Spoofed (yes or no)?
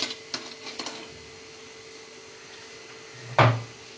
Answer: no